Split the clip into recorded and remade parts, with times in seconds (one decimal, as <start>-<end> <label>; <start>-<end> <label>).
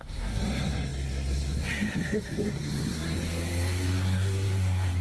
0.0-5.0 remade